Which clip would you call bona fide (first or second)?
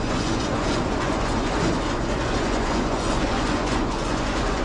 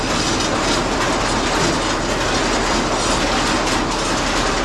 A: second